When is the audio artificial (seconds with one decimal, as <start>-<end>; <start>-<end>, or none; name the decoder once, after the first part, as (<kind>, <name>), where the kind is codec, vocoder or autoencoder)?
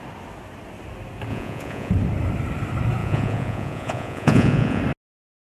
1.3-1.9 (vocoder, Vocos); 3.0-4.8